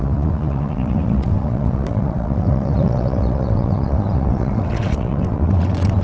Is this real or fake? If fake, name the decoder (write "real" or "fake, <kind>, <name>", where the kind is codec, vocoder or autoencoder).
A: fake, vocoder, WaveNeXt